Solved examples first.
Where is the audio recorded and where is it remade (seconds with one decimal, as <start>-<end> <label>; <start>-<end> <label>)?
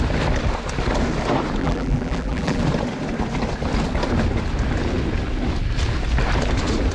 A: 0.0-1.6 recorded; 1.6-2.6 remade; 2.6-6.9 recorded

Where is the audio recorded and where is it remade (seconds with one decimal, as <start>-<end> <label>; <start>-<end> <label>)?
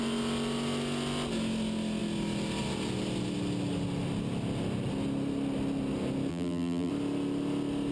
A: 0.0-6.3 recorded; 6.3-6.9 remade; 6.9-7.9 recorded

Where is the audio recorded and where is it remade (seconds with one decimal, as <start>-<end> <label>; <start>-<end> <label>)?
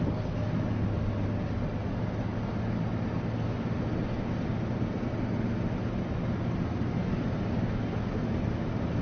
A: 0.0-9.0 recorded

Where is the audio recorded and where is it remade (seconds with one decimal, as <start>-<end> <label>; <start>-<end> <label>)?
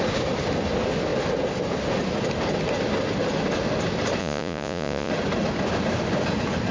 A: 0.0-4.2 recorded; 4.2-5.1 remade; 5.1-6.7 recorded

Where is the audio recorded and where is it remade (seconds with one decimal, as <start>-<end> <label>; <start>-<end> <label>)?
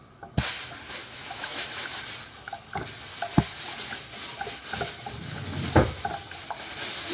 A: 0.0-1.0 recorded; 1.0-2.0 remade; 2.0-7.1 recorded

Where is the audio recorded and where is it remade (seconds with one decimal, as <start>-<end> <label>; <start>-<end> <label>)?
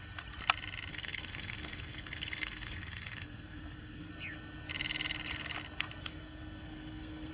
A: 0.0-0.9 recorded; 0.9-4.1 remade; 4.1-6.0 recorded; 6.0-7.3 remade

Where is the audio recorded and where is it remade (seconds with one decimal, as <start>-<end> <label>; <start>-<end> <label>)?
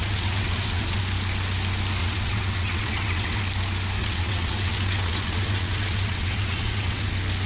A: 0.0-1.0 remade; 1.0-2.0 recorded; 2.0-3.4 remade; 3.4-4.0 recorded; 4.0-7.1 remade; 7.1-7.5 recorded